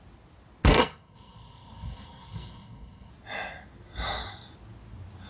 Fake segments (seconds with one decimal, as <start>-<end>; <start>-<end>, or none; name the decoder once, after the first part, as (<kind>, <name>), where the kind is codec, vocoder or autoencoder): 0.7-3.1 (codec, SNAC)